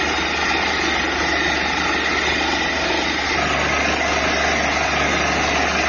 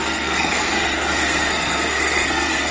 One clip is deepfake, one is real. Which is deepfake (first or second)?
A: second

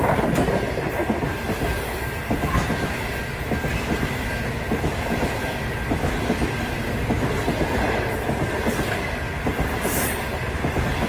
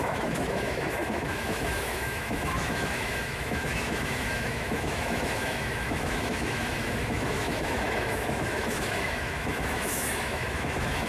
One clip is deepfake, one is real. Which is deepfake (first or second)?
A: second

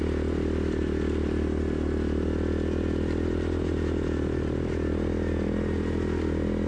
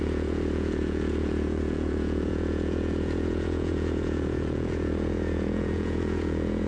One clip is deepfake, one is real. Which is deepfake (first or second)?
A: second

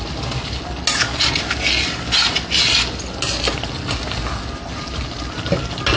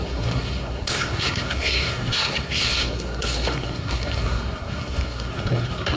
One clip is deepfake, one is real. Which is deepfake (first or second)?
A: second